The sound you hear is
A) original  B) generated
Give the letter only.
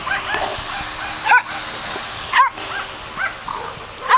A